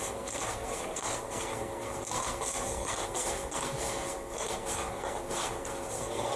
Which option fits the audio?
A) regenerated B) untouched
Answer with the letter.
A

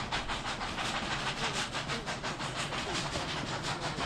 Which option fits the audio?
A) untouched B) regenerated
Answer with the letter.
A